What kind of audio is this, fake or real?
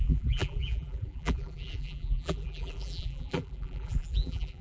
fake